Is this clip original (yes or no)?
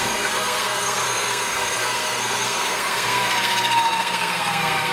no